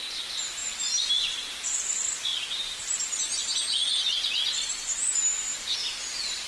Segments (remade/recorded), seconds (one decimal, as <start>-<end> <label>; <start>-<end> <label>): 0.0-2.3 recorded; 2.3-3.4 remade; 3.4-6.5 recorded